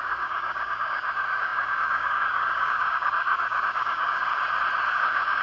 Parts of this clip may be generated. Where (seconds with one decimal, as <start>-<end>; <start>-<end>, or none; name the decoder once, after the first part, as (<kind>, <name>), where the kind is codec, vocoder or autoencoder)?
0.0-4.3 (codec, DAC); 4.9-5.4